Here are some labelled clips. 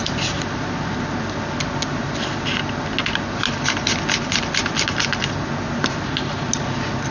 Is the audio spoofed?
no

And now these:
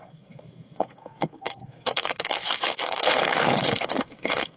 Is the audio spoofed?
yes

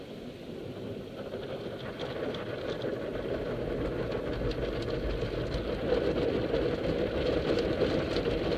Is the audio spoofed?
no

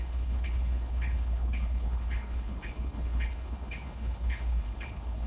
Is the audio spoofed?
yes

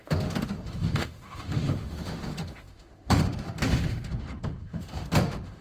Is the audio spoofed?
yes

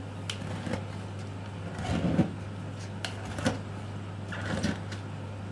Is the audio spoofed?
no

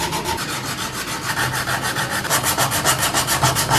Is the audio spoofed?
no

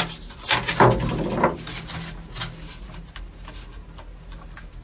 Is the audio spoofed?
no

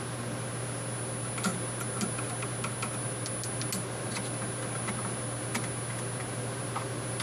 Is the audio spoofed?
no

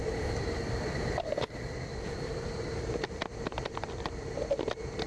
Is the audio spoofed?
yes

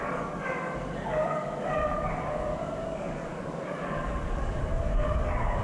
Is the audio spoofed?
yes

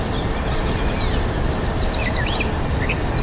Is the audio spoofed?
no